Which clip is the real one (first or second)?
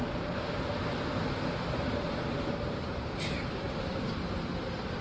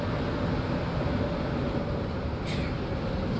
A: second